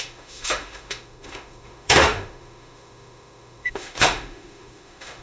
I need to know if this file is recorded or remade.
remade